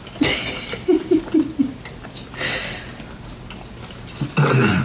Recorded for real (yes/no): yes